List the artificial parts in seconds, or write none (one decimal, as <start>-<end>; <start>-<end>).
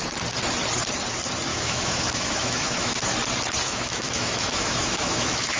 1.5-3.0; 3.6-5.6